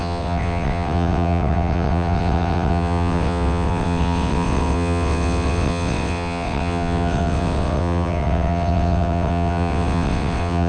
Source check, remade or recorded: remade